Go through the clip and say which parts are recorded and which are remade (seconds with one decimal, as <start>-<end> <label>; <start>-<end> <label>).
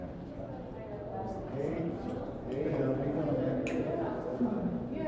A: 0.0-1.6 recorded; 1.6-3.4 remade; 3.4-4.3 recorded; 4.3-5.1 remade